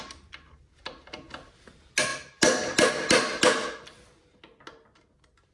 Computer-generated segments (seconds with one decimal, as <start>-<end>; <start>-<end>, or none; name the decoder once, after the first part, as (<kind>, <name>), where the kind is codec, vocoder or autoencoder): none